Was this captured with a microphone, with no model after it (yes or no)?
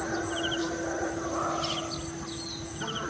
yes